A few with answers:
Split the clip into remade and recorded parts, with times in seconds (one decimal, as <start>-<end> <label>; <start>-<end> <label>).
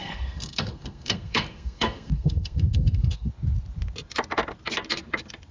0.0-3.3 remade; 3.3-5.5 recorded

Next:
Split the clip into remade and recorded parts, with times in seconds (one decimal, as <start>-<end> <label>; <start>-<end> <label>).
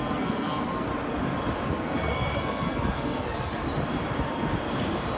0.0-0.9 remade; 0.9-1.7 recorded; 1.7-3.6 remade; 3.6-5.2 recorded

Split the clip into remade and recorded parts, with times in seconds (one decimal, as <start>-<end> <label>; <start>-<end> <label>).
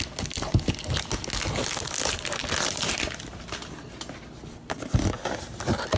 0.0-6.0 recorded